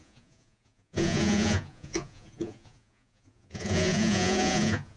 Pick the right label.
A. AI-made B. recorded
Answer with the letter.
A